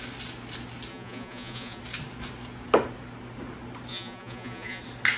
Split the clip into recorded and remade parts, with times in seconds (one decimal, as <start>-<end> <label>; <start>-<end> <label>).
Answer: 0.0-0.9 recorded; 0.9-1.8 remade; 1.8-3.9 recorded; 3.9-4.8 remade; 4.8-5.2 recorded

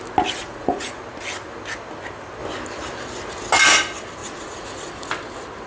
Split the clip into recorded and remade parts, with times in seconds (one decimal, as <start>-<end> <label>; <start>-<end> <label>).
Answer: 0.0-0.4 recorded; 0.4-1.0 remade; 1.0-4.2 recorded; 4.2-5.1 remade; 5.1-5.7 recorded

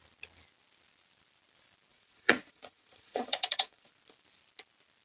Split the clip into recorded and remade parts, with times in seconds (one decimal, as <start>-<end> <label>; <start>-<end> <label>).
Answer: 0.0-1.9 recorded; 1.9-3.9 remade; 3.9-5.0 recorded

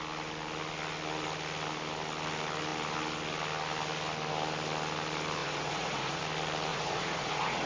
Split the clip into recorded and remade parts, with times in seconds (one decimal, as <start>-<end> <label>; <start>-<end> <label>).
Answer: 0.0-5.4 recorded; 5.4-6.2 remade; 6.2-6.7 recorded; 6.7-7.7 remade

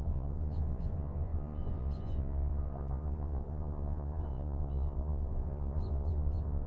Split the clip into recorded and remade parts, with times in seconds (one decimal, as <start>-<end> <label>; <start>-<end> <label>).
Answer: 0.0-6.7 remade

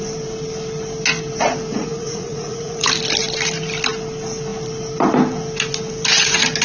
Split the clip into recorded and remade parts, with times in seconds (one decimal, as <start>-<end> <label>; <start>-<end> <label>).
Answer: 0.0-1.7 recorded; 1.7-2.9 remade; 2.9-6.6 recorded

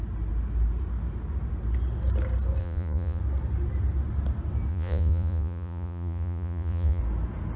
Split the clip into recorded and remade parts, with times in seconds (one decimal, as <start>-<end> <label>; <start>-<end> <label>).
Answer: 0.0-2.6 recorded; 2.6-3.2 remade; 3.2-4.7 recorded; 4.7-7.0 remade; 7.0-7.6 recorded